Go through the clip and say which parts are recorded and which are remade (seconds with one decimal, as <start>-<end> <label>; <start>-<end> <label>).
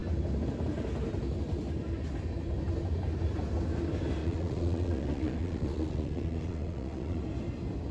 0.0-4.2 recorded; 4.2-7.2 remade; 7.2-7.9 recorded